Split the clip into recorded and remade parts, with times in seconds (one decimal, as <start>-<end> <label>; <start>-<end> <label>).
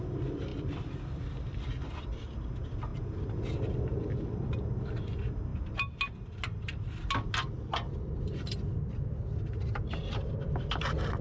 0.0-11.2 recorded